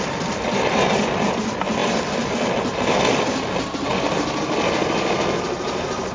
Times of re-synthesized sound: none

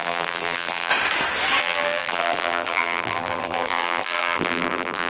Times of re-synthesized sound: 0.0-0.9 (vocoder, BigVGAN v2); 1.6-5.1

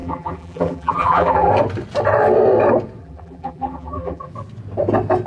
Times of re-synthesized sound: 0.0-1.5 (vocoder, BigVGAN v2); 3.0-4.3

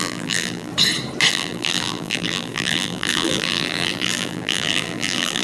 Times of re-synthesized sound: 0.0-0.7 (vocoder, BigVGAN v2); 1.3-5.4

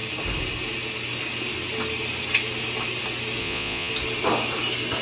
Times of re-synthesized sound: 3.4-3.9 (vocoder, Vocos)

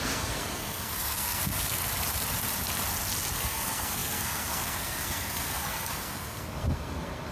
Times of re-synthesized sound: 0.0-1.8 (codec, SNAC); 3.3-7.3